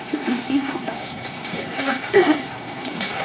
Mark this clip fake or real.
fake